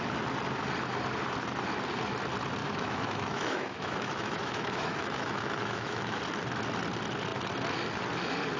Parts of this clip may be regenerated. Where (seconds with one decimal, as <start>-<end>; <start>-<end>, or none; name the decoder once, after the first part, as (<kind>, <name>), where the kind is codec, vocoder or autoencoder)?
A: 2.6-6.2 (autoencoder, DAC-VAE)